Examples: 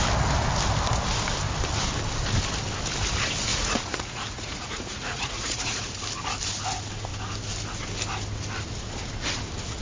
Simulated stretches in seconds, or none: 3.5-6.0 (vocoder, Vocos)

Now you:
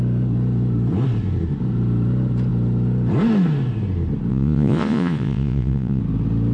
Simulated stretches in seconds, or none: 4.3-6.0 (vocoder, Vocos)

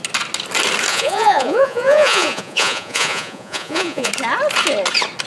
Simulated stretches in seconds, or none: 0.9-4.1 (vocoder, Vocos)

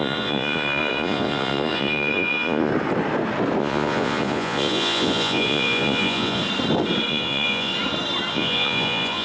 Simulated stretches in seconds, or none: 0.0-2.7 (vocoder, Vocos); 3.6-6.4; 7.1-7.7; 8.3-9.2

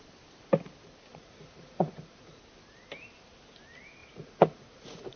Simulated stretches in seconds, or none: 1.1-2.4 (vocoder, Vocos); 4.0-5.2

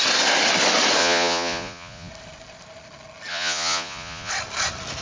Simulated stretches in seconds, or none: 1.0-2.1 (vocoder, Vocos); 3.3-4.3

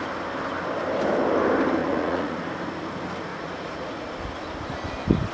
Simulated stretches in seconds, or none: 1.8-2.4 (vocoder, Vocos); 3.3-4.1

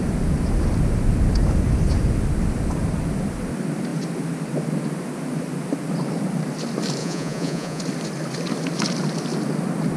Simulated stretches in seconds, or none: 7.0-7.8 (vocoder, Vocos)